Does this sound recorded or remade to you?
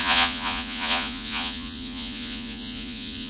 remade